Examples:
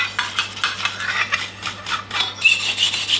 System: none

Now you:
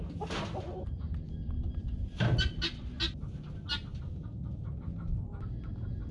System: none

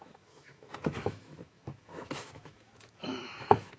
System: autoencoder, DAC-VAE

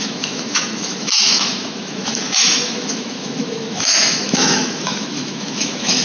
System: autoencoder, DAC-VAE